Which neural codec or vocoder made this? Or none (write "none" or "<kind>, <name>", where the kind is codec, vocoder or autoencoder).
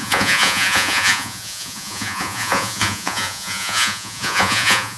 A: vocoder, Vocos